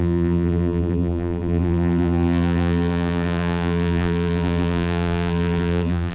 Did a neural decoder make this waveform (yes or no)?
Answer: yes